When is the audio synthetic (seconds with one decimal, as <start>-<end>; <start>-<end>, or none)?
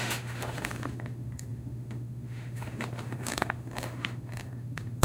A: 0.0-5.0